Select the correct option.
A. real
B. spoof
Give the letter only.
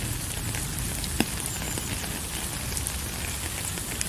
A